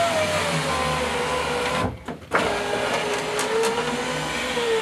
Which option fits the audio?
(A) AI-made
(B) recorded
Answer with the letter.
B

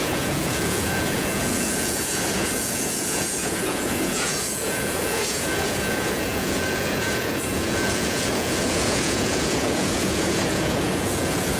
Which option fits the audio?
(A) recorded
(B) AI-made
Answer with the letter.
B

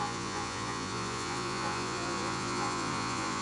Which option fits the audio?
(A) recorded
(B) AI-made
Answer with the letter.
B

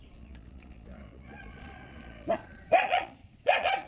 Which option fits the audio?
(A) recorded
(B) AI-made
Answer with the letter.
B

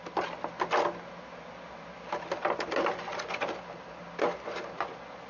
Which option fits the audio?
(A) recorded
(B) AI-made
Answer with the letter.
A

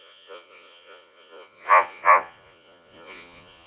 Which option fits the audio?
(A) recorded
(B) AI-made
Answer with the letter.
B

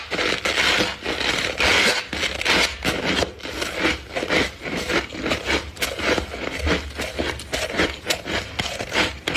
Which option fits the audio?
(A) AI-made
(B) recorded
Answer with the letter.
B